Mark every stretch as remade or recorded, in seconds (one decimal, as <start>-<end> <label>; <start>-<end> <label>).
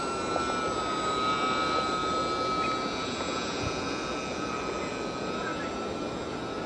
0.0-6.7 recorded